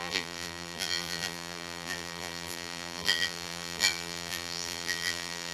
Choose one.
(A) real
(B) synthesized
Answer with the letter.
B